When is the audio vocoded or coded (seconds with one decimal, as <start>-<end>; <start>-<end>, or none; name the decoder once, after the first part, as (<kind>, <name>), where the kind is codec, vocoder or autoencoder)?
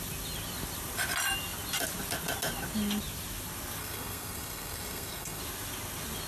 3.8-5.4 (codec, SNAC)